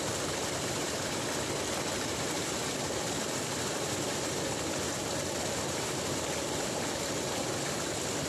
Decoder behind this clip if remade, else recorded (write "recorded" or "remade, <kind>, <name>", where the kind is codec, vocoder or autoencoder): recorded